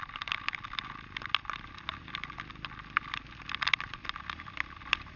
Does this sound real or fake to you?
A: real